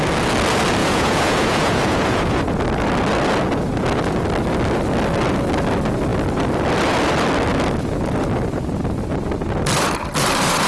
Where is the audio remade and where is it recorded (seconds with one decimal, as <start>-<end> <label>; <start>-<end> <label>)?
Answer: 0.0-0.8 recorded; 0.8-2.5 remade; 2.5-10.7 recorded